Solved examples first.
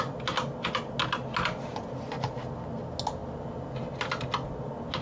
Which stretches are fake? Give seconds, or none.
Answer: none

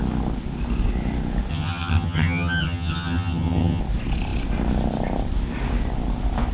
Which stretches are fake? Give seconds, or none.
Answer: 1.5-3.8

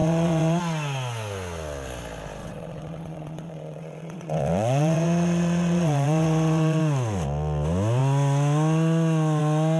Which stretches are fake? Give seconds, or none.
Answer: 0.0-0.6; 2.4-6.8

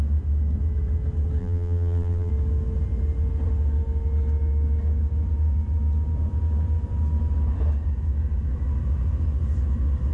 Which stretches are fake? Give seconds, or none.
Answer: 1.4-2.3